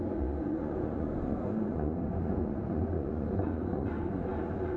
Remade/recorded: remade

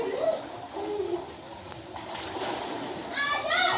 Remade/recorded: recorded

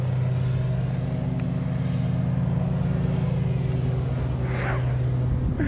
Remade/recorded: recorded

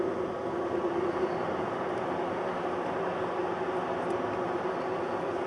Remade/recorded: recorded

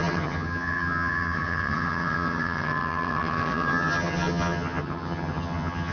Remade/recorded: remade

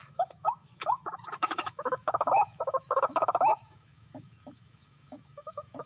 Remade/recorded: remade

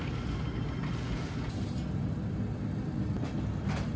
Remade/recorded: recorded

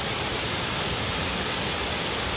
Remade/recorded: recorded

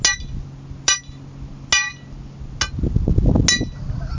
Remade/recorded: recorded